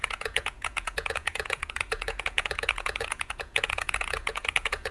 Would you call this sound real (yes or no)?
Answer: no